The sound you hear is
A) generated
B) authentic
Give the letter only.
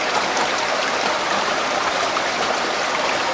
B